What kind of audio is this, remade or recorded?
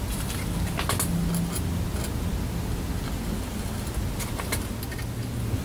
recorded